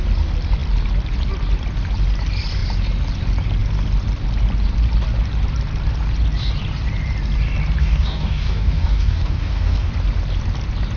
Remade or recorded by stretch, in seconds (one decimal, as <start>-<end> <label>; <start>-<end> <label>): 0.0-7.8 recorded; 7.8-9.9 remade; 9.9-11.0 recorded